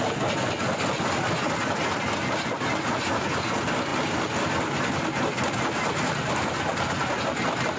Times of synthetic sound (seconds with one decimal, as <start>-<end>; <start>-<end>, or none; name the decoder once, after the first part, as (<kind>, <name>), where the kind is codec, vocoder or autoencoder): none